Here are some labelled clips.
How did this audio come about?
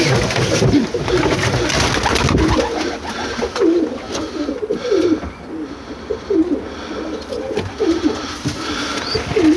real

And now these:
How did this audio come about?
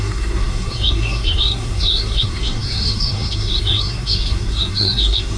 fake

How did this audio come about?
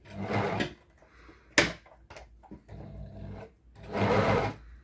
real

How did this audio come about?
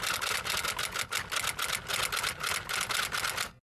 real